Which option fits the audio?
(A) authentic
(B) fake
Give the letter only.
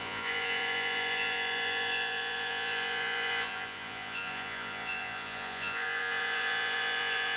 B